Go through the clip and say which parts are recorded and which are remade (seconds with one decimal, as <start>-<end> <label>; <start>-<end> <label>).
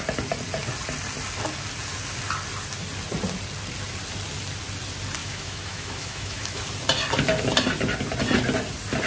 0.0-5.2 recorded; 5.2-6.6 remade; 6.6-9.1 recorded